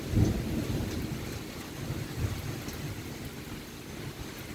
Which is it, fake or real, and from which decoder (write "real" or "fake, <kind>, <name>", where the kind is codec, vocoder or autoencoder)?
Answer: real